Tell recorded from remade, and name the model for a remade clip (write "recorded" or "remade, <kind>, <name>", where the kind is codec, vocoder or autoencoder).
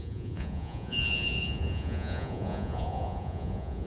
remade, vocoder, Vocos